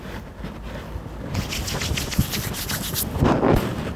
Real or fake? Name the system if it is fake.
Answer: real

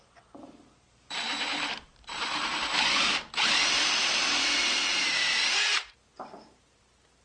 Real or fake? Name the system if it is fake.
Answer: fake, vocoder, BigVGAN v2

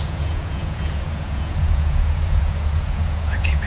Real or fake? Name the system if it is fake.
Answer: fake, vocoder, Vocos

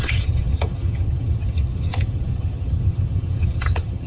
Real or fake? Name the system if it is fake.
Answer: fake, vocoder, HiFi-GAN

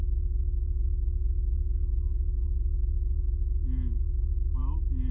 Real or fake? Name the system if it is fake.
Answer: real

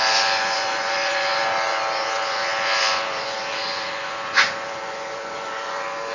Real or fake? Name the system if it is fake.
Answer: fake, vocoder, Vocos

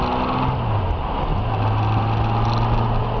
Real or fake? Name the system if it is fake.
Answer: real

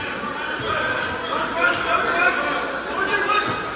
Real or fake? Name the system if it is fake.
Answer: real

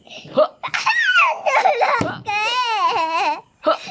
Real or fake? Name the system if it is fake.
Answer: real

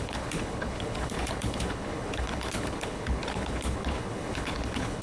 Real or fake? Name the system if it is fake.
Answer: fake, codec, HILCodec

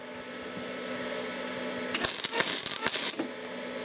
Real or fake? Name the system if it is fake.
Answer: real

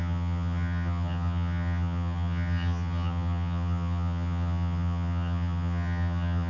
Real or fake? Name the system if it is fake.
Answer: fake, vocoder, HiFi-GAN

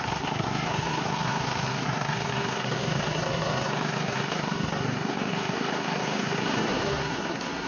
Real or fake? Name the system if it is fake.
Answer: fake, codec, SNAC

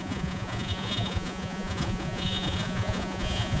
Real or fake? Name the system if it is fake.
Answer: fake, vocoder, Vocos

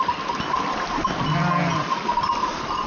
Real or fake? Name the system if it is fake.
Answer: real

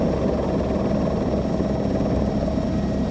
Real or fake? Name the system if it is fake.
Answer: real